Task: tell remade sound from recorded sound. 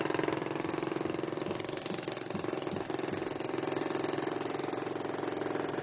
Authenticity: recorded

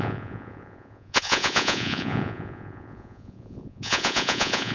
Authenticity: remade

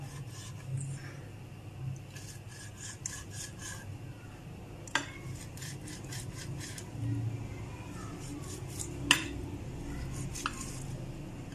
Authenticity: recorded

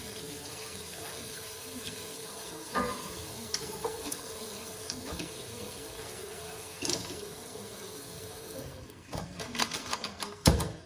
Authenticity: remade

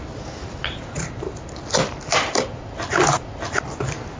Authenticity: recorded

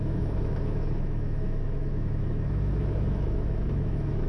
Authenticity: remade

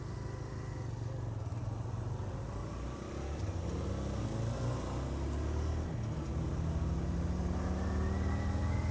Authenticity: recorded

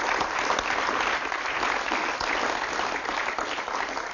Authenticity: recorded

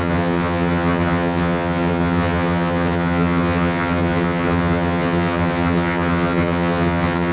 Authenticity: remade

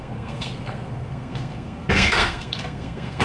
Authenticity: remade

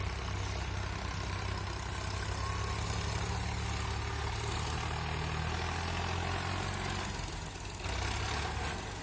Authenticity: recorded